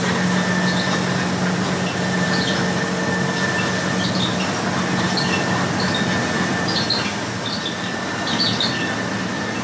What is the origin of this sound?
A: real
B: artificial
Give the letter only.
A